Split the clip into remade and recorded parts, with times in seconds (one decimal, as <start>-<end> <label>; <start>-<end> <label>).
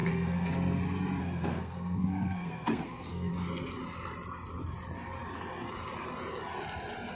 0.0-0.5 remade; 0.5-1.2 recorded; 1.2-3.3 remade; 3.3-7.2 recorded